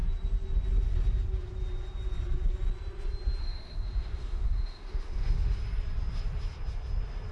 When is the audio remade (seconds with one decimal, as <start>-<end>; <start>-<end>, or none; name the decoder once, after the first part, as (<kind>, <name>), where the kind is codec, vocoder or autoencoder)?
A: 3.4-5.6 (autoencoder, DAC-VAE)